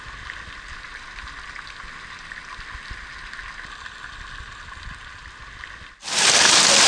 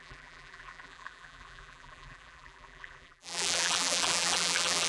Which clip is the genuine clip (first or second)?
first